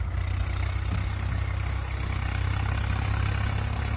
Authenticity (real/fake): real